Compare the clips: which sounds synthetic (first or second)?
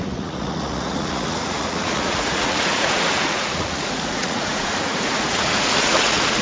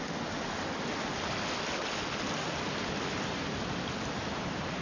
first